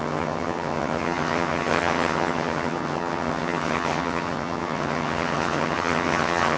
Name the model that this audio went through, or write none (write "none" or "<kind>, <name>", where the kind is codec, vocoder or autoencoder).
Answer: vocoder, HiFi-GAN